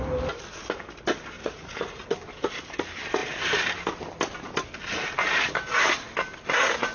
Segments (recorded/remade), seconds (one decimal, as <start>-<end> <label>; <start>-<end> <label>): 0.0-1.4 recorded; 1.4-2.1 remade; 2.1-6.9 recorded